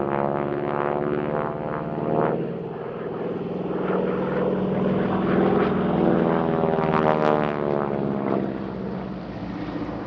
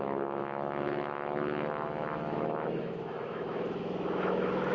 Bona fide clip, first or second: first